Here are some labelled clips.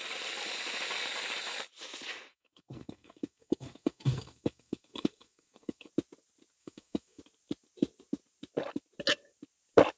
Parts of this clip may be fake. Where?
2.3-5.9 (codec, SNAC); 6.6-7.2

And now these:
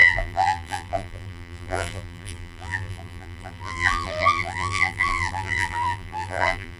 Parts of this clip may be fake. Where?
0.0-6.8 (vocoder, BigVGAN v2)

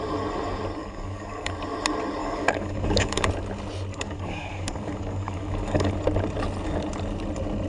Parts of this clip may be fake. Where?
0.8-1.5 (codec, DAC); 2.2-3.3; 3.9-5.9

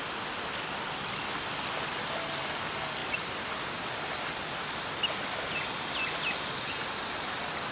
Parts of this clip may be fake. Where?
none